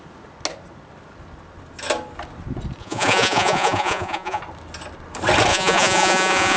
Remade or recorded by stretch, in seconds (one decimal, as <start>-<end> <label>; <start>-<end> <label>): 0.0-2.8 recorded; 2.8-4.4 remade; 4.4-5.5 recorded; 5.5-6.6 remade